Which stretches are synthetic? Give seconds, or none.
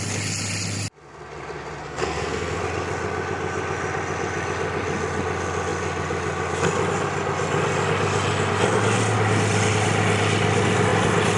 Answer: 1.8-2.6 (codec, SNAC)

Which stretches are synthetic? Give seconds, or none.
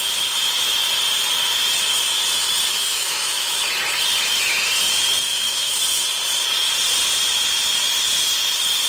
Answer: 2.7-3.6 (autoencoder, DAC-VAE); 5.2-5.8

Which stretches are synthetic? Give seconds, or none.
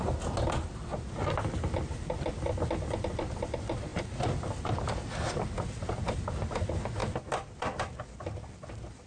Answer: none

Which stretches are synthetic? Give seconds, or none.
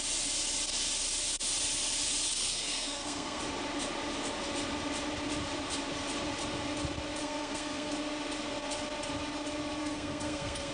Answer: 2.3-3.4 (codec, SNAC); 7.2-7.9; 9.8-10.7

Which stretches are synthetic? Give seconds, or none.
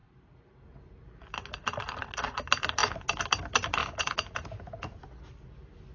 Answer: 3.8-5.0 (vocoder, Vocos)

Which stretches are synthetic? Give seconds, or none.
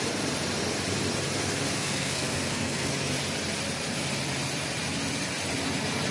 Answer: 1.8-2.9 (codec, SNAC)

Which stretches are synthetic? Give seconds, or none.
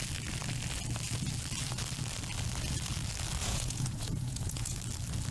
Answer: 3.4-4.8 (vocoder, Vocos)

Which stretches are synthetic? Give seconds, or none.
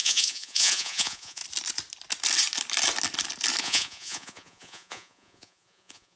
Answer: 0.0-1.4 (vocoder, Vocos); 3.6-6.2